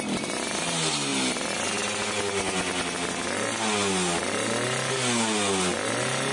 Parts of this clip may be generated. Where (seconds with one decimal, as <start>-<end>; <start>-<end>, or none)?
none